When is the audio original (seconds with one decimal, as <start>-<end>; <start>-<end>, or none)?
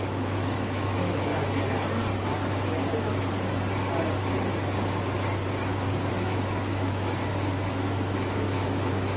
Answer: 1.3-6.1